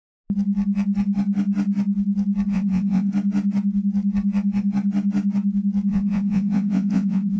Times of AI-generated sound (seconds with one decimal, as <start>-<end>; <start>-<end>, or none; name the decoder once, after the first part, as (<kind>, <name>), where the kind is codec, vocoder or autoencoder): 2.5-3.1 (vocoder, Vocos); 5.9-7.4